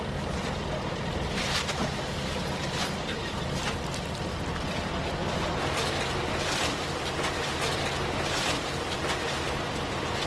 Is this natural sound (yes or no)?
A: no